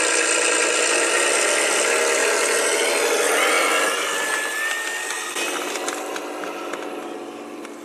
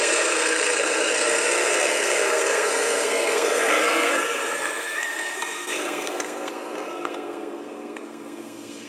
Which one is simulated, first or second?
second